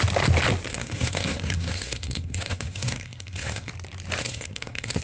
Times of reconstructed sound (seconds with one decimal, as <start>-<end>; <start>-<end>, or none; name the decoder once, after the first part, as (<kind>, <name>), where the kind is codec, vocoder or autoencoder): 0.7-3.7 (codec, SNAC); 4.2-5.0